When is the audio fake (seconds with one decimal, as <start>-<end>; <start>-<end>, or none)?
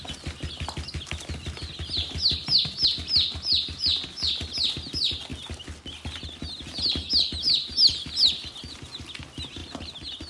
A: none